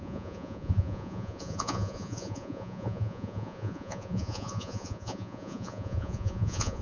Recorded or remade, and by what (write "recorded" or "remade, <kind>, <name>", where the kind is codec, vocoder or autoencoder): remade, vocoder, Vocos